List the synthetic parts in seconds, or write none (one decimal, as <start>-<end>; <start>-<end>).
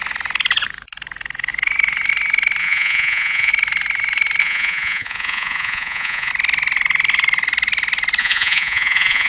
2.6-3.5; 4.4-6.3; 8.2-9.3